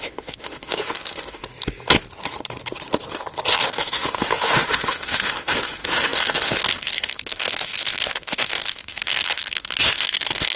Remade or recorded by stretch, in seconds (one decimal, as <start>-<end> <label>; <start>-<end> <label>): 0.0-1.4 remade; 1.4-3.6 recorded; 3.6-10.6 remade

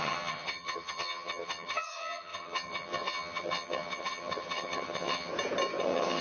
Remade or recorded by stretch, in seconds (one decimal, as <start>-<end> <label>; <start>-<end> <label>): 0.0-5.3 remade; 5.3-5.8 recorded; 5.8-6.2 remade

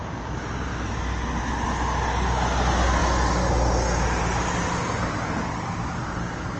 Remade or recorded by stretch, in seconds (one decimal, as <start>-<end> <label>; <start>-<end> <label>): 0.0-6.6 recorded

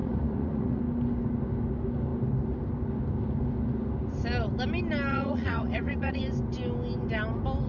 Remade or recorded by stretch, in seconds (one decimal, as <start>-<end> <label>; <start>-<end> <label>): 0.0-0.8 remade; 0.8-5.1 recorded; 5.1-6.2 remade; 6.2-7.7 recorded

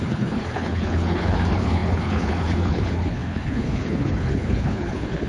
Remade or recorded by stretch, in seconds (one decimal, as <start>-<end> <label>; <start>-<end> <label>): 0.0-5.3 remade

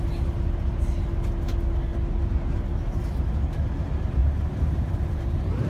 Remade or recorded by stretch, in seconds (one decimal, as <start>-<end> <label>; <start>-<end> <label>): 0.0-4.2 recorded; 4.2-5.7 remade

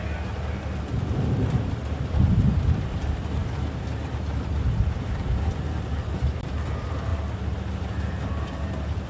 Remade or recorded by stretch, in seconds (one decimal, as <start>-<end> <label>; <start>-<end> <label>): 0.0-3.4 remade; 3.4-5.0 recorded; 5.0-7.1 remade; 7.1-7.8 recorded; 7.8-9.1 remade